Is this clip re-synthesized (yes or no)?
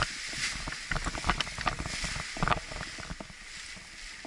no